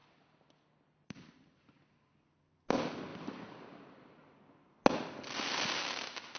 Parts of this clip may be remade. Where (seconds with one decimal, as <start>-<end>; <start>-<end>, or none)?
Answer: none